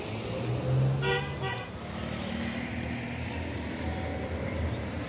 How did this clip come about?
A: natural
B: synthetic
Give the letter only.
A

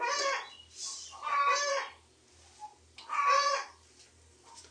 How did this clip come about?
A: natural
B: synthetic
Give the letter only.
A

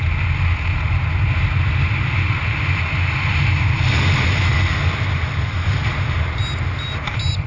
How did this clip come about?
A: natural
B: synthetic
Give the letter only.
A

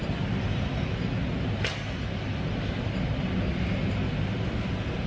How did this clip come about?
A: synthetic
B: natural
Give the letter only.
B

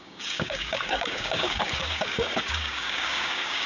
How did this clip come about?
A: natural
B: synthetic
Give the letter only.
B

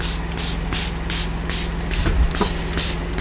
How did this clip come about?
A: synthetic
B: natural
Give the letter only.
B